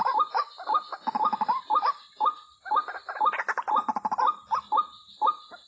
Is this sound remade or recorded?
recorded